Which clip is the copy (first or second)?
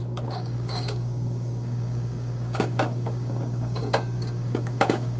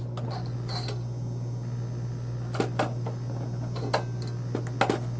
first